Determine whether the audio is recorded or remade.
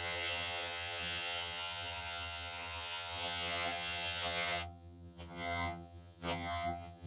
remade